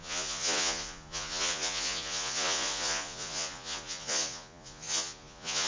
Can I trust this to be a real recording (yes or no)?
no